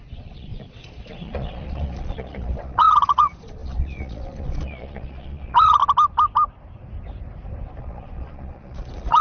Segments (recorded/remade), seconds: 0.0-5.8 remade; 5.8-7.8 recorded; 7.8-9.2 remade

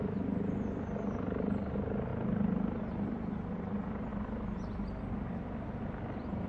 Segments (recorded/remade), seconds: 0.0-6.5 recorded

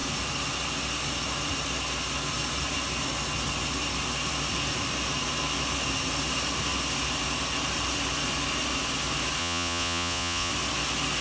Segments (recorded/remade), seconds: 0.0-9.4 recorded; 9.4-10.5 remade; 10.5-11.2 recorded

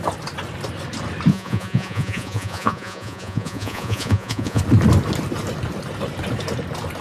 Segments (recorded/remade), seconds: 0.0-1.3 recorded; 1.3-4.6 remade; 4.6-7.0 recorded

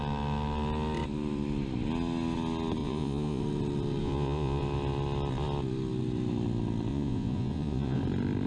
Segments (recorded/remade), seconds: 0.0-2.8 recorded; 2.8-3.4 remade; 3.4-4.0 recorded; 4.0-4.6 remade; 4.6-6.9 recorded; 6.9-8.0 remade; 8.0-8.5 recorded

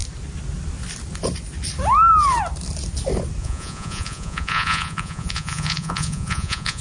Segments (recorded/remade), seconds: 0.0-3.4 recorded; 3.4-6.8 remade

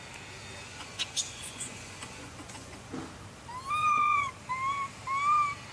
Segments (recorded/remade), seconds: 0.0-0.7 recorded; 0.7-2.9 remade; 2.9-3.8 recorded; 3.8-4.3 remade; 4.3-5.7 recorded